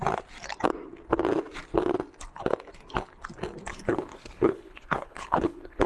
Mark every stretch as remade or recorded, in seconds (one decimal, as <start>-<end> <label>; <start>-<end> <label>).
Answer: 0.0-3.7 recorded; 3.7-5.9 remade